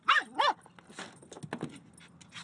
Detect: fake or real real